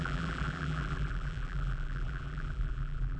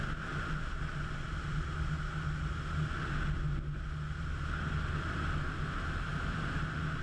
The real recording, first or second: second